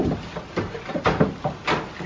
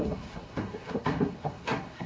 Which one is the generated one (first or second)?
second